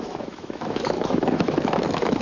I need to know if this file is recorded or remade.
remade